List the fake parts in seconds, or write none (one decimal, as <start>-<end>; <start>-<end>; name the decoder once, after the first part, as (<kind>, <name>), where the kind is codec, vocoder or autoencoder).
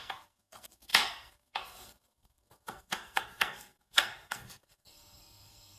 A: 0.0-5.8 (codec, SNAC)